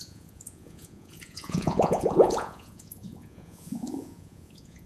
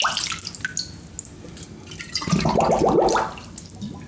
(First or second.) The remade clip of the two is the first